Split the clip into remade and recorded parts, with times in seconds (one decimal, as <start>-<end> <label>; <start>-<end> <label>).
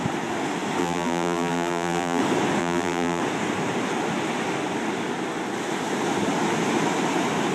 0.0-0.8 recorded; 0.8-2.2 remade; 2.2-2.6 recorded; 2.6-3.2 remade; 3.2-7.5 recorded